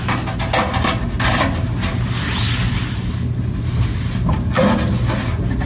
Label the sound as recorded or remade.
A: recorded